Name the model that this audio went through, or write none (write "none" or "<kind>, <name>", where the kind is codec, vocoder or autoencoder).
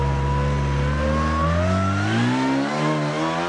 none